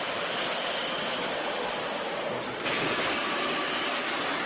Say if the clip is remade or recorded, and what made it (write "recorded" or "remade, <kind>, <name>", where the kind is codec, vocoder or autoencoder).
recorded